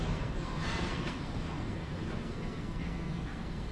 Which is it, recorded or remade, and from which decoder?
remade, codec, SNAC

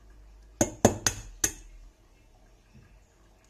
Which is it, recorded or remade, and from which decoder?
recorded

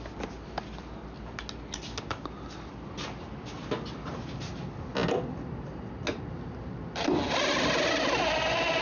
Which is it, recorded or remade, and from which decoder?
recorded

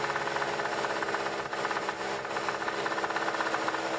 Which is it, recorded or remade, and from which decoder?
recorded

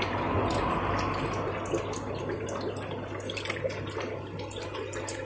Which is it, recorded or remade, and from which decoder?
recorded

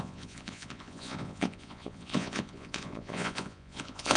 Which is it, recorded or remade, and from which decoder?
remade, vocoder, Vocos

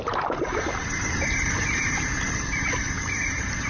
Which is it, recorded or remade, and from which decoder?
remade, vocoder, BigVGAN v2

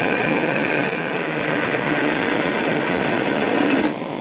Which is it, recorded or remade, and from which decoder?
remade, vocoder, Vocos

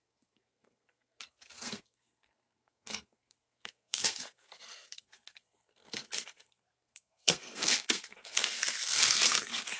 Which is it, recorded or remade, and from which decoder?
remade, codec, SNAC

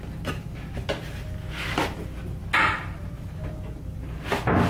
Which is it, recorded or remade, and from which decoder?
recorded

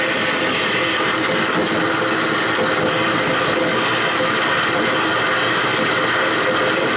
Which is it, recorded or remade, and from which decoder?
recorded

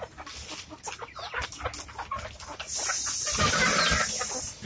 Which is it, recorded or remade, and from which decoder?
recorded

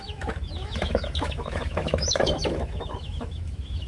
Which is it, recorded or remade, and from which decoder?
remade, autoencoder, DAC-VAE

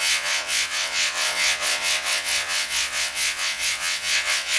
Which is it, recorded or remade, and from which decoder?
remade, vocoder, WaveNeXt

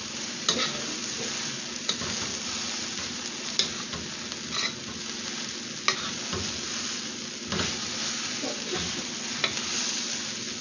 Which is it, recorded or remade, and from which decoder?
recorded